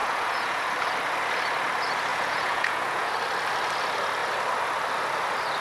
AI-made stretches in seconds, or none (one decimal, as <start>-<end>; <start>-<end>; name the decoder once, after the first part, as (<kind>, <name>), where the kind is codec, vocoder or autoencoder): 0.0-0.7 (vocoder, Vocos); 2.1-3.1